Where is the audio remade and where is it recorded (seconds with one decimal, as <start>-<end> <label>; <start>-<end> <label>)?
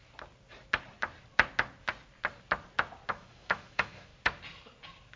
0.0-3.1 recorded; 3.1-4.1 remade; 4.1-5.2 recorded